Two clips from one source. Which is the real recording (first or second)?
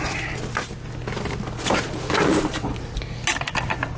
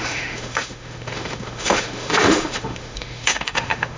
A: first